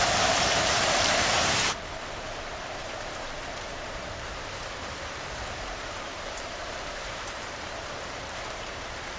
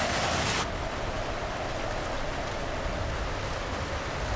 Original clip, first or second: second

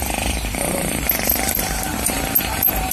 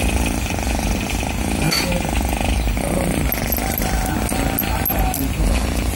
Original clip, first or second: second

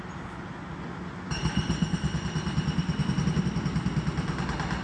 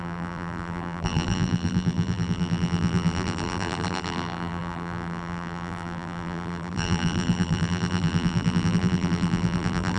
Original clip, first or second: first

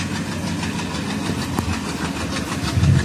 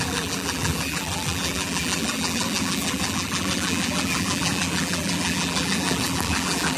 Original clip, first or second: first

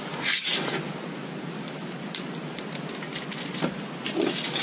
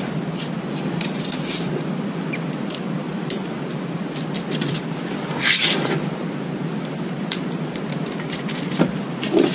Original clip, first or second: first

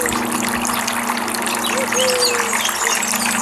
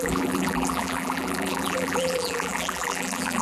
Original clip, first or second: first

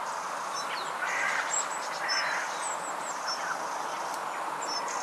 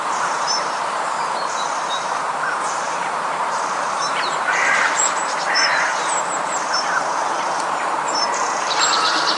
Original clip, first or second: first